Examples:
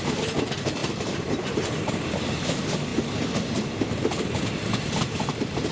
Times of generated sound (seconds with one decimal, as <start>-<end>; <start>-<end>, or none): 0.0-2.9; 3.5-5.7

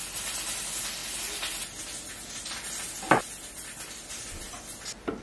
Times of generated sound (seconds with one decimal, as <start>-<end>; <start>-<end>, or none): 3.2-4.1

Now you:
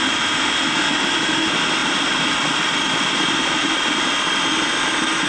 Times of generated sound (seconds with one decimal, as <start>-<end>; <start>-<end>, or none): 1.8-4.1

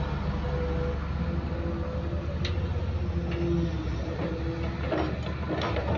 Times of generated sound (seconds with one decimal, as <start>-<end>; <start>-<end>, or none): 3.7-4.3

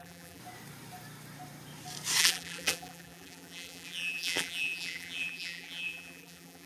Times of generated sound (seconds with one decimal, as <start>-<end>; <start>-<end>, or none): 0.0-0.4; 2.2-6.7